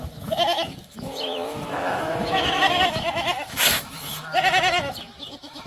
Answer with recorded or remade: remade